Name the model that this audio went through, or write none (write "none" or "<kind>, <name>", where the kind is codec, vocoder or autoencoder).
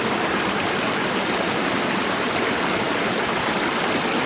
none